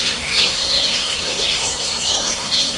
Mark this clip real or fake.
fake